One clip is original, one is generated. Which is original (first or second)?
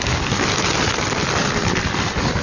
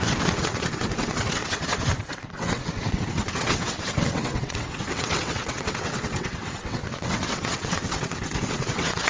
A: first